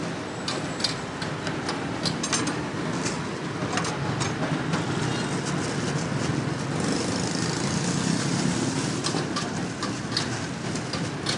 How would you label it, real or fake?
real